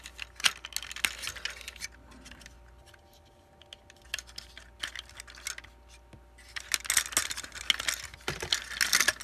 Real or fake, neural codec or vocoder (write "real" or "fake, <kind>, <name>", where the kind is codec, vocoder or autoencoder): real